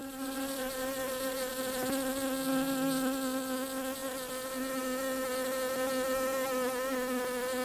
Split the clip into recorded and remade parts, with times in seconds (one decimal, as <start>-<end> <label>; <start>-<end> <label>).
0.0-1.5 remade; 1.5-7.6 recorded